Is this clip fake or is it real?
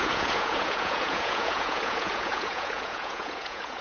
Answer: fake